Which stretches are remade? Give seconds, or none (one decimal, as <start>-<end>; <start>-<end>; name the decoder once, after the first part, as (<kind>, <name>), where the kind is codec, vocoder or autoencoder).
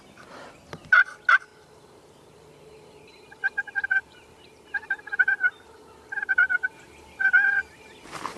1.5-5.8 (vocoder, BigVGAN v2)